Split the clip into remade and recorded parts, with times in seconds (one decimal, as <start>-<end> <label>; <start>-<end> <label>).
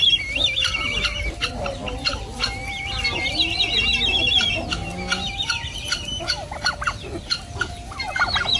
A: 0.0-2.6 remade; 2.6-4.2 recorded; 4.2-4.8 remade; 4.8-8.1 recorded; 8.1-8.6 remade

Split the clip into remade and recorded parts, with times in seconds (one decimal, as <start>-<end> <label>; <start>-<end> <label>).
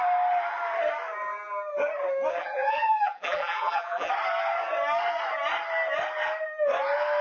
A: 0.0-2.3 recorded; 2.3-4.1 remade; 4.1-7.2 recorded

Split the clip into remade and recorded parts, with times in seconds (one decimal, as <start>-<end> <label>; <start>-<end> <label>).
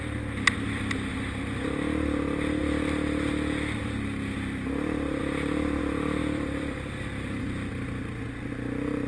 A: 0.0-6.2 recorded; 6.2-7.4 remade; 7.4-9.1 recorded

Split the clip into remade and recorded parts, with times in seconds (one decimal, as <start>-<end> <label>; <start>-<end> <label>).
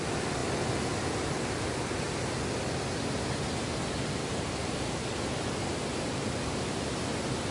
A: 0.0-4.3 recorded; 4.3-5.1 remade; 5.1-5.7 recorded; 5.7-6.9 remade; 6.9-7.5 recorded